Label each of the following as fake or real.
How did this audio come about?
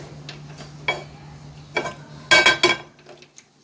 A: real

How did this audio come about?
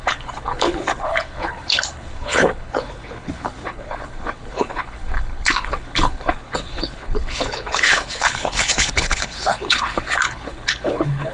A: fake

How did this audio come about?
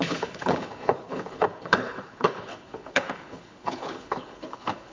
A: fake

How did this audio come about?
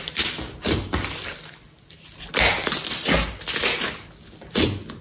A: real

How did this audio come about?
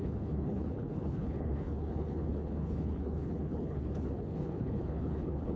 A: fake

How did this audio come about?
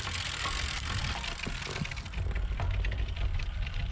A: real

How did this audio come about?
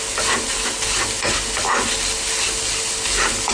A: real